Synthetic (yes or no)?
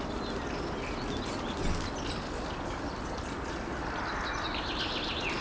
no